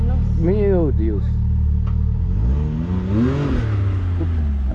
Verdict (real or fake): real